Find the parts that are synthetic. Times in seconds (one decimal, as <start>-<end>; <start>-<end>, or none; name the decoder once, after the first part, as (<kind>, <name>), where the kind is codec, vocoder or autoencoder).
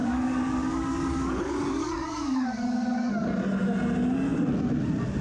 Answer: 0.0-3.1 (codec, DAC)